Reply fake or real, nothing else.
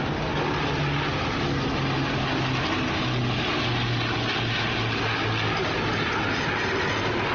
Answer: real